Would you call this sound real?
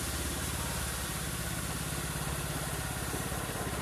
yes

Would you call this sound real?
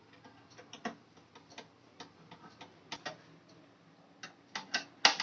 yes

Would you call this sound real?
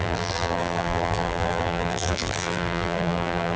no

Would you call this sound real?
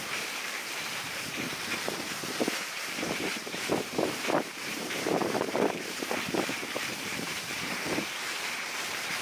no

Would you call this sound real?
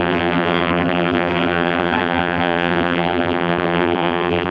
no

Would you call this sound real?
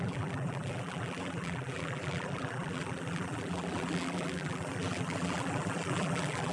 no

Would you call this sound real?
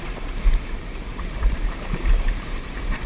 no